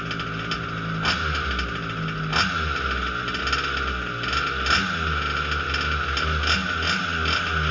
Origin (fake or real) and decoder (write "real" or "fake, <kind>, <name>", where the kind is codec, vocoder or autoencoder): real